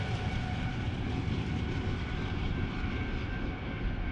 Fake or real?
real